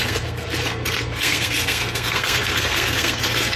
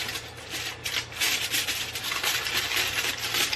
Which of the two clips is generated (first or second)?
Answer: first